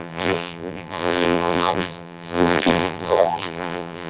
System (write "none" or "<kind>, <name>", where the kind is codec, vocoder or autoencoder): vocoder, BigVGAN v2